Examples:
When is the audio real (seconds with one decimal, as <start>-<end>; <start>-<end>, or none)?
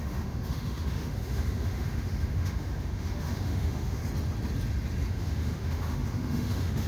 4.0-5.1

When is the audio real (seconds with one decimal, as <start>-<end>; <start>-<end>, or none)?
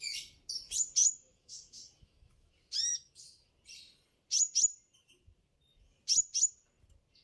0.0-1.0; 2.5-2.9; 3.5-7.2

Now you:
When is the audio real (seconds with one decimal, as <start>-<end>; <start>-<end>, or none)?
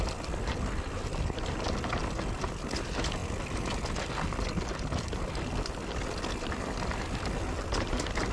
0.0-8.3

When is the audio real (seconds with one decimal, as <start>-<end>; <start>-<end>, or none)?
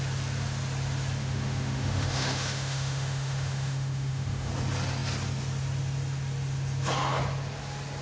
0.0-1.2; 4.5-8.0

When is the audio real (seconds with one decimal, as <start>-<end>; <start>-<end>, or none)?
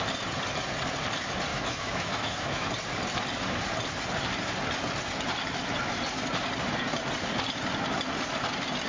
0.0-1.5; 2.7-8.9